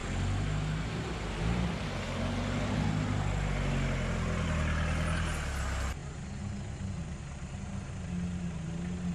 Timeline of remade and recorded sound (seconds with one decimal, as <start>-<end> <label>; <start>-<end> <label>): 0.0-9.1 recorded